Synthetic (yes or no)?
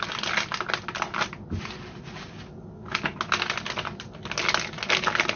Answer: no